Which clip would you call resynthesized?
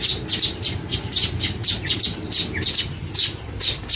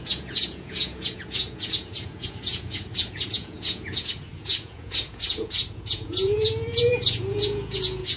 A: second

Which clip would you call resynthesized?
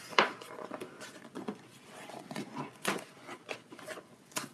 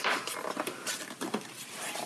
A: first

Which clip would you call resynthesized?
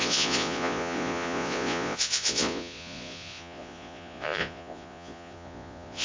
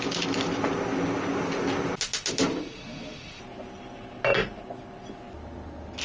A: first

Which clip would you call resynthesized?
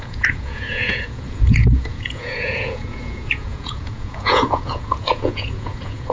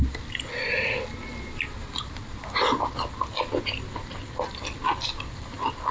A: first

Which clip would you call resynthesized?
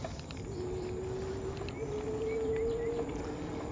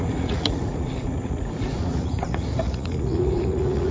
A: second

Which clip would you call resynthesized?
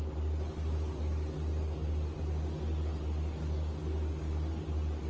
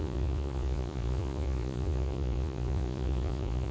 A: second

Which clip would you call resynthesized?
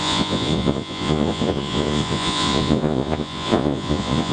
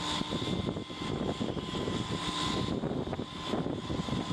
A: first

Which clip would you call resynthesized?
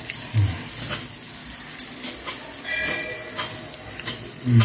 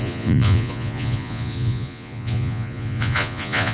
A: second